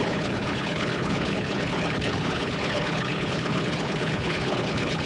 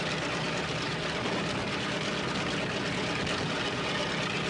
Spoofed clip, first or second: first